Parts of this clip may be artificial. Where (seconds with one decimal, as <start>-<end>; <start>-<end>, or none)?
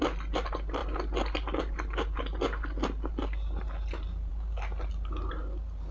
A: none